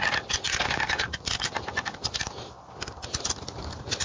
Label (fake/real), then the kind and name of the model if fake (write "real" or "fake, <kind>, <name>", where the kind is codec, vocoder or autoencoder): real